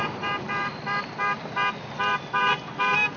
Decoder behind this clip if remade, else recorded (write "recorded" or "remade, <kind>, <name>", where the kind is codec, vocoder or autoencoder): remade, vocoder, BigVGAN v2